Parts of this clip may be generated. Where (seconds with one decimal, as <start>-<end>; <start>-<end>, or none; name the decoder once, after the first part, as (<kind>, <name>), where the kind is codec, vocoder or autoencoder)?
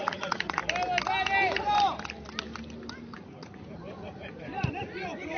0.0-0.6 (vocoder, Vocos); 3.1-5.4